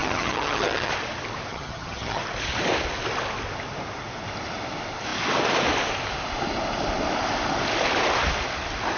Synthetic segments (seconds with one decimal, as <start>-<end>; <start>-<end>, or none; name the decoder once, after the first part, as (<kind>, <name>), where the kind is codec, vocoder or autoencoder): 0.0-0.9 (vocoder, HiFi-GAN); 1.5-2.2